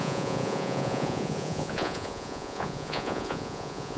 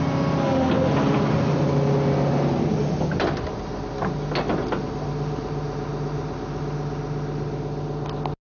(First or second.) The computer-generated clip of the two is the first